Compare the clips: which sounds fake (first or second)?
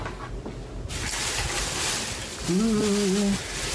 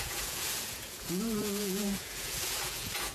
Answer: second